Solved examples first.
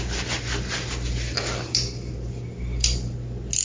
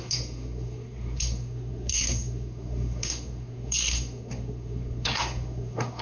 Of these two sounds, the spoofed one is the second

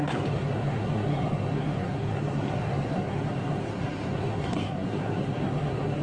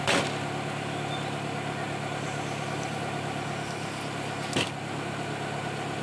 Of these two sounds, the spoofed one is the first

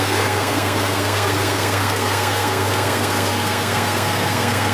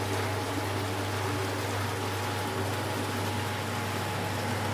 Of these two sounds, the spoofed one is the first